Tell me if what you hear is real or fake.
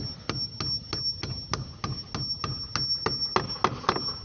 real